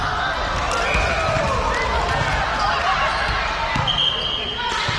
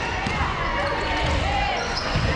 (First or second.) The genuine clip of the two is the first